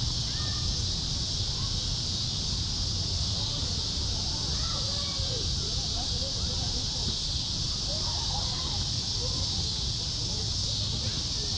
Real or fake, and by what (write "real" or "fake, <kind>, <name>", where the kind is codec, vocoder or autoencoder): real